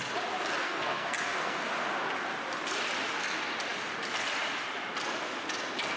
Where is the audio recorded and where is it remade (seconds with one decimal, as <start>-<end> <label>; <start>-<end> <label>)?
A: 0.0-0.6 recorded; 0.6-1.7 remade; 1.7-6.0 recorded